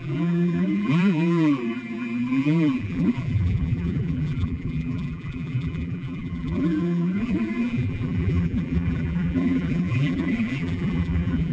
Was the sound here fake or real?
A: fake